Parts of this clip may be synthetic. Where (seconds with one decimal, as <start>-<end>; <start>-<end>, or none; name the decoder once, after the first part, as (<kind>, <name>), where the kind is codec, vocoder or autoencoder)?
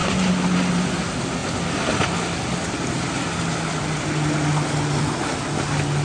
none